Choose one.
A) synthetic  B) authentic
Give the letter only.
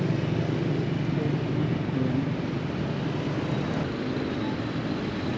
B